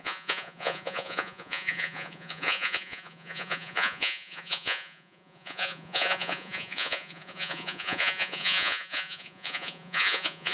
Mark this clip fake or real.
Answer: fake